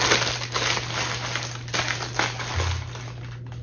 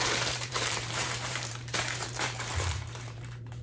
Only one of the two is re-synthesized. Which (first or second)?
second